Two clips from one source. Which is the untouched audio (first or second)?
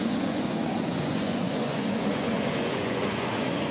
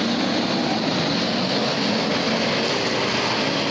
second